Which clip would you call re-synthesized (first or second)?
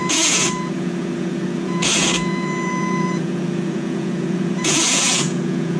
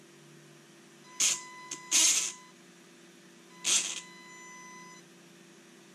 first